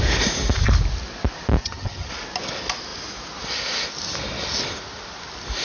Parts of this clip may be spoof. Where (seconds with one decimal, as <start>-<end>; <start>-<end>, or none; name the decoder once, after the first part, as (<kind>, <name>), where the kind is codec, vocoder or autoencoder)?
1.6-2.1 (vocoder, HiFi-GAN)